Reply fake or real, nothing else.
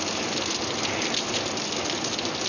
real